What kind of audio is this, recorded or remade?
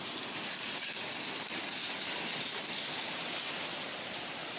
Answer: recorded